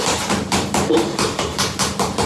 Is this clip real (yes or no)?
no